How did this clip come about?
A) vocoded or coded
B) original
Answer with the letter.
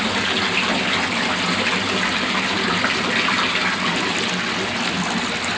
B